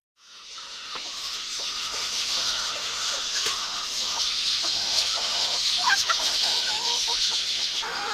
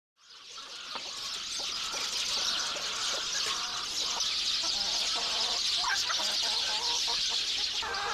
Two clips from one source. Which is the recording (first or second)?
second